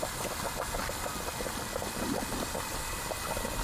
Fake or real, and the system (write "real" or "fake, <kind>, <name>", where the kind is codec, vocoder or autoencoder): real